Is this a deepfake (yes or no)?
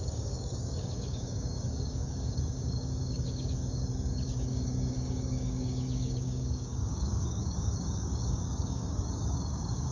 yes